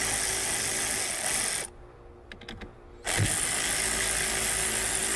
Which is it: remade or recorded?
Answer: recorded